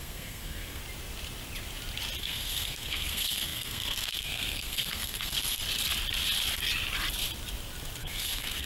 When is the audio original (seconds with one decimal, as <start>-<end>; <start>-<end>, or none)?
0.8-2.2; 5.6-8.0